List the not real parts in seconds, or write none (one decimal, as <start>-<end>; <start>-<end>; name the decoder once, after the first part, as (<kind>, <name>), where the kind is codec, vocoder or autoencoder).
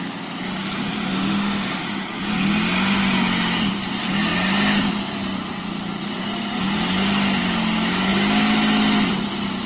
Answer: 1.1-1.8 (autoencoder, DAC-VAE)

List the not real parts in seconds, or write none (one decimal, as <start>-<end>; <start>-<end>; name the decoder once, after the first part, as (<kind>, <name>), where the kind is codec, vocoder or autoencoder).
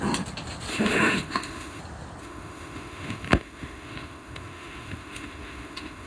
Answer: 0.7-1.8 (autoencoder, DAC-VAE); 2.2-6.1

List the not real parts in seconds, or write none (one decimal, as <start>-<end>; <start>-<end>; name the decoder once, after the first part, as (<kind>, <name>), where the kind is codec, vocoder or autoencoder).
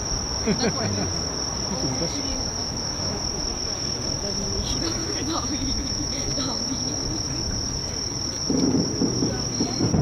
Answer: 2.6-3.2 (autoencoder, DAC-VAE); 5.0-6.6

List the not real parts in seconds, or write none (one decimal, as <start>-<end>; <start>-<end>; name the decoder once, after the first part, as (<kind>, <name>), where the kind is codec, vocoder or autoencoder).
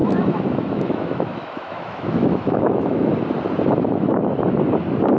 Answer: 0.0-3.1 (autoencoder, DAC-VAE)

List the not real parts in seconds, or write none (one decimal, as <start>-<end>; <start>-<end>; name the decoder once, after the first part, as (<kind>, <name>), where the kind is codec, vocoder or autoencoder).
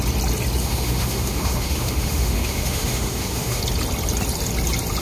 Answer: 0.6-3.6 (autoencoder, DAC-VAE)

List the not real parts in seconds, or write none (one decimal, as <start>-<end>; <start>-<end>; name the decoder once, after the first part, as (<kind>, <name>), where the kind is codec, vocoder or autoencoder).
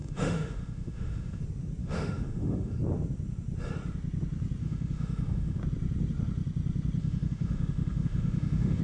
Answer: 0.0-1.4 (autoencoder, DAC-VAE); 1.8-2.7; 4.6-5.6; 7.0-8.8